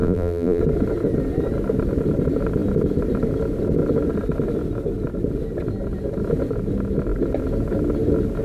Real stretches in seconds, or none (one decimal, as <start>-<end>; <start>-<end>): 0.6-8.4